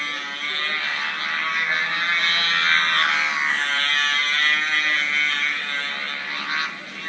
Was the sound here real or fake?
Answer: real